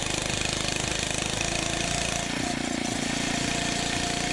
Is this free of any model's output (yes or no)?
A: yes